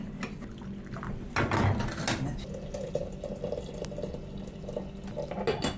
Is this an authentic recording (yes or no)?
yes